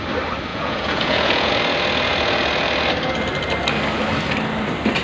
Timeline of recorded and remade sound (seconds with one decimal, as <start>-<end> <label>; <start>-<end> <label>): 0.0-0.5 recorded; 0.5-1.5 remade; 1.5-5.0 recorded